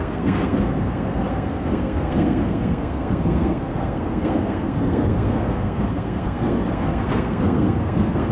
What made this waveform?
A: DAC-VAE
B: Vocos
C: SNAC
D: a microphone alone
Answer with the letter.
C